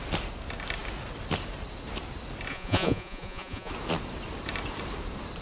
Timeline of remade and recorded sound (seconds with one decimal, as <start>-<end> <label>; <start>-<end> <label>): 0.0-2.5 recorded; 2.5-3.7 remade; 3.7-5.4 recorded